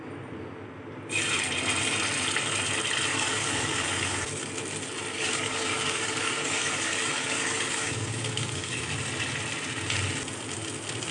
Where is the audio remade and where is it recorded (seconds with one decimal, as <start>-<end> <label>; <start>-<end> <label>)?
0.0-3.1 recorded; 3.1-4.5 remade; 4.5-5.1 recorded; 5.1-8.9 remade; 8.9-11.1 recorded